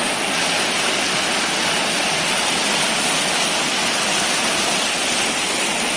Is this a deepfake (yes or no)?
no